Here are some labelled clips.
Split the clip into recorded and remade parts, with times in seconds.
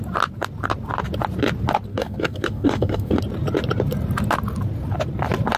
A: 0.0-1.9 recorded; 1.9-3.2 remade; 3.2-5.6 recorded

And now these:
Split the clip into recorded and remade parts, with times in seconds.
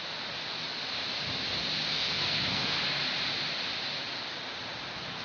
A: 0.0-1.9 recorded; 1.9-2.8 remade; 2.8-5.2 recorded